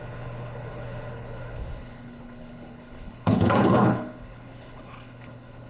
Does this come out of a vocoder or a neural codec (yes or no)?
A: yes